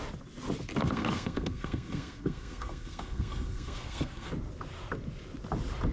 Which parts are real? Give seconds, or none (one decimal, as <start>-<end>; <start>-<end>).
0.0-0.8; 4.3-5.9